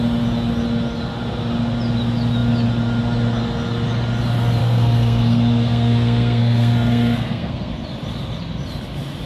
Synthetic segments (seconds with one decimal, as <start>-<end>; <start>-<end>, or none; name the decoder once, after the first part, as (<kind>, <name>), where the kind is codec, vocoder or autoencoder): 4.6-7.7 (codec, SNAC)